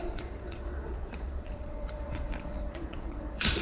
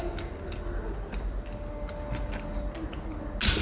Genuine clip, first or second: second